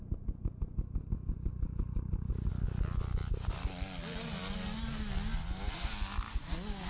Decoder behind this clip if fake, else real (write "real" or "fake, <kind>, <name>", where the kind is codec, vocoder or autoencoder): real